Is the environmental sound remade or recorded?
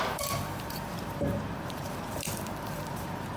remade